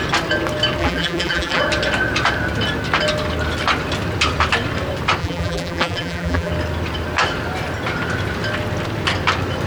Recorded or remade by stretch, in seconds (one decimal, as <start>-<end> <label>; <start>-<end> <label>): 0.0-0.8 recorded; 0.8-1.6 remade; 1.6-5.2 recorded; 5.2-6.5 remade; 6.5-9.7 recorded